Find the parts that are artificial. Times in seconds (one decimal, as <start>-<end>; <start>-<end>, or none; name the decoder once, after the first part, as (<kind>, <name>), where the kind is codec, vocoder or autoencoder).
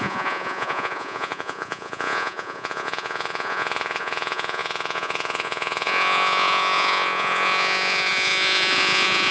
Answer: 0.0-9.3 (vocoder, Vocos)